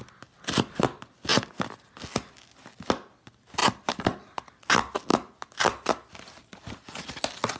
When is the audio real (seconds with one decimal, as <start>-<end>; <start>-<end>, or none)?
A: 0.0-7.6